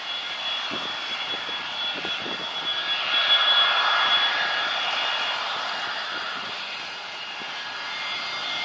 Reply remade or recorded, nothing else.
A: remade